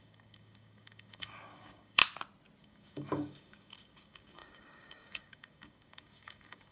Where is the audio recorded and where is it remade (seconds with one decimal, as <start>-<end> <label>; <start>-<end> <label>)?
0.0-2.0 remade; 2.0-2.6 recorded; 2.6-6.7 remade